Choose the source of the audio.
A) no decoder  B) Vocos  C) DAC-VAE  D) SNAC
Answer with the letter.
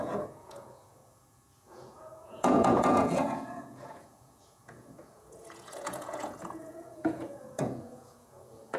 B